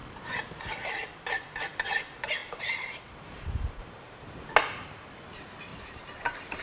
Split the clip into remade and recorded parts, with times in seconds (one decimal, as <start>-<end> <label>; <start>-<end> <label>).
0.0-2.4 recorded; 2.4-4.4 remade; 4.4-5.7 recorded; 5.7-6.6 remade